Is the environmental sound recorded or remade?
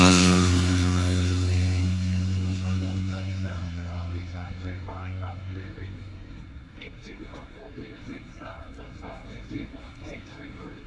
remade